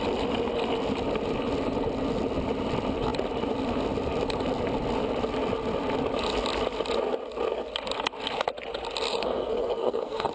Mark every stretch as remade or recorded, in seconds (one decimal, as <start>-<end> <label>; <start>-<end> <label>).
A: 0.0-9.1 recorded; 9.1-10.3 remade